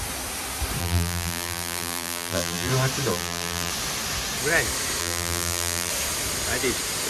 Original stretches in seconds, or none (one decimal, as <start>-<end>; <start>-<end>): 0.0-0.8; 2.7-3.1; 3.7-5.0; 5.9-7.1

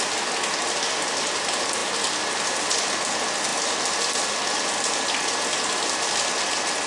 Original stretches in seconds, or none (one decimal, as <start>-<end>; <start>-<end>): 0.0-6.9

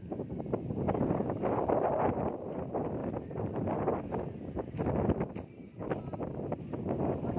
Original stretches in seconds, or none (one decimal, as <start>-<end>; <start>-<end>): 0.0-7.4

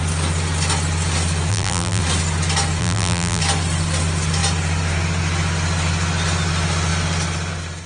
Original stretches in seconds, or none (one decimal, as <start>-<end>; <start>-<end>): 0.0-1.5; 2.0-2.8; 3.4-7.9

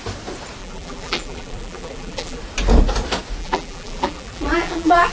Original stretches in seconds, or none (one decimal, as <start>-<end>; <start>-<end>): 0.0-0.6; 2.4-3.4